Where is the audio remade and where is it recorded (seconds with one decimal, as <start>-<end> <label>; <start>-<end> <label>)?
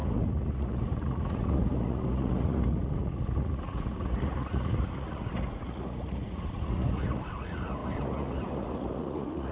0.0-9.5 remade